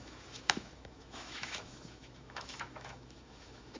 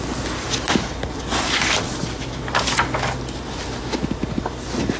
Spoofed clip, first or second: first